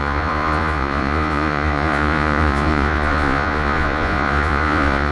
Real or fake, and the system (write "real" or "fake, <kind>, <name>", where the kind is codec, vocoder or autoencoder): fake, vocoder, Vocos